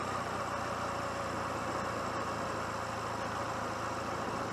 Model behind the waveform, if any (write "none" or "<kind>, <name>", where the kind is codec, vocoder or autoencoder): none